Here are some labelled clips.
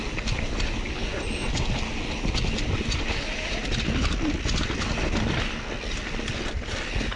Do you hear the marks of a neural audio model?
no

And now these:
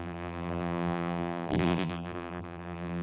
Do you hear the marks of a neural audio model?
yes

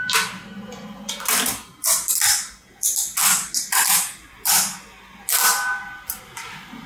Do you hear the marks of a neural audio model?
no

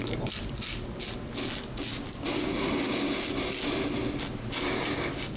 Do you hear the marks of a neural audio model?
no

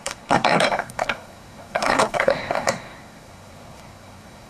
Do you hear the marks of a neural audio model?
yes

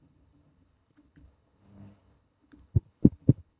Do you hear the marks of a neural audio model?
yes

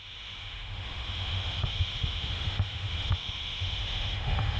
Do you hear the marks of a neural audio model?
yes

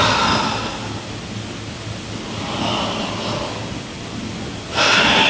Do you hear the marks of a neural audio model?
no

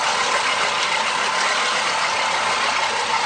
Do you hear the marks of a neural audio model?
no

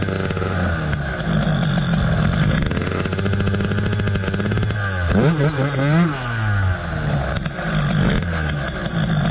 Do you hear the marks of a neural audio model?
no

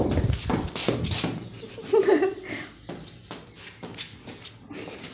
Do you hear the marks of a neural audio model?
no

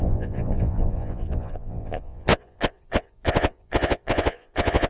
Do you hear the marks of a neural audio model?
yes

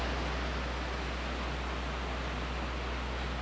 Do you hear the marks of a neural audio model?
no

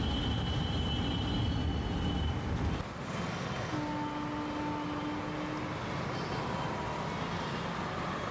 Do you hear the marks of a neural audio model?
no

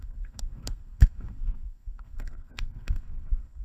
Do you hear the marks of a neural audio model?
yes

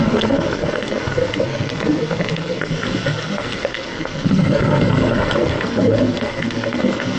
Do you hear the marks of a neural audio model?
yes